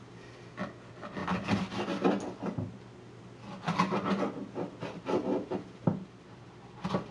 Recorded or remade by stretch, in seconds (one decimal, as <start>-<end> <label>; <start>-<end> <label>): 0.0-7.1 recorded